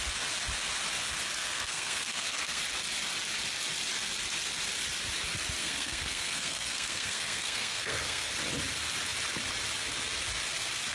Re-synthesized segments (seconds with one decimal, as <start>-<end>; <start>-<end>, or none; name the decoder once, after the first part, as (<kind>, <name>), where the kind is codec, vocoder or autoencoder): 1.4-2.6 (codec, SNAC); 5.6-8.3

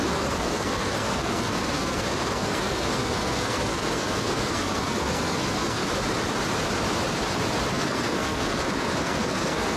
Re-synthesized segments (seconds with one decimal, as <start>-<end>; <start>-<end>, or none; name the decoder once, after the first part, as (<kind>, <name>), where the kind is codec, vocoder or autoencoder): 0.0-5.8 (codec, SNAC); 7.7-9.8

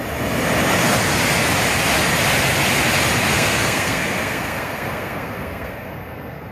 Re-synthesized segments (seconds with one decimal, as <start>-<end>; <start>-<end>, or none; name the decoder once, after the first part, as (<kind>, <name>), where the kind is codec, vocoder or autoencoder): 3.3-6.5 (codec, SNAC)

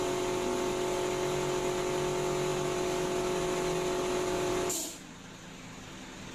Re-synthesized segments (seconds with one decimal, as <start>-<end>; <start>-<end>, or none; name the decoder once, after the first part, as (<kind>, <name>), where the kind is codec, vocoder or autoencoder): none

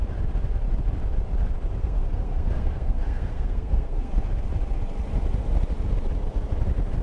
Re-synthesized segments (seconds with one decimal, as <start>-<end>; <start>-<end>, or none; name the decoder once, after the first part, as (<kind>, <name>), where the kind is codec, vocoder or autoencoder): 1.8-4.1 (codec, SNAC)